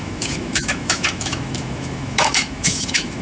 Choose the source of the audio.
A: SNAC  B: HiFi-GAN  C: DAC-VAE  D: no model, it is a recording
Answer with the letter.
C